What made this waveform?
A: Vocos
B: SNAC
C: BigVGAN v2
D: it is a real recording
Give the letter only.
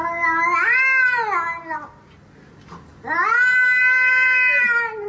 D